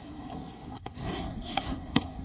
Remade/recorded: remade